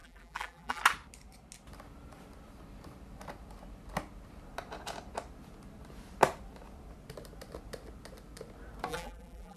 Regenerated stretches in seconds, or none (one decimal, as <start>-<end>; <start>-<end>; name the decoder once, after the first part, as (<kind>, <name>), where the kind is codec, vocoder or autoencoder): 0.0-0.8 (vocoder, BigVGAN v2); 8.9-9.6